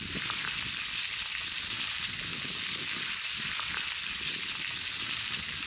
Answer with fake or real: real